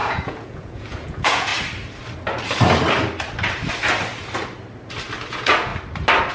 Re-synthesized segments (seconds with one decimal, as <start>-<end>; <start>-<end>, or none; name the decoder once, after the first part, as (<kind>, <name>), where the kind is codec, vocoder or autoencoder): 0.0-1.5 (vocoder, Vocos); 5.3-5.7